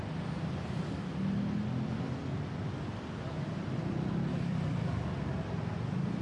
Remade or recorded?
recorded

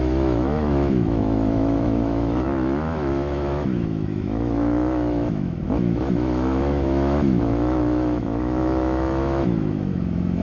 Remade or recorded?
remade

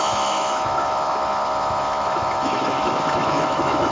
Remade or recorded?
remade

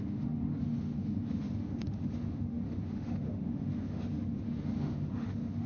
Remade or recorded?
remade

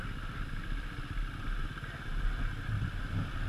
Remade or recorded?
recorded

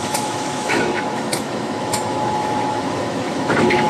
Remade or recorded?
remade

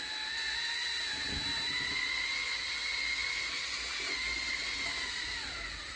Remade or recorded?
recorded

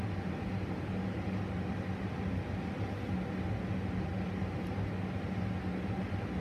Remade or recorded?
recorded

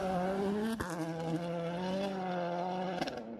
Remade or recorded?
recorded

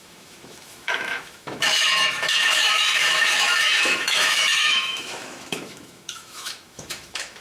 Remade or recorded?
remade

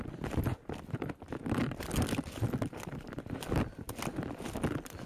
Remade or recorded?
recorded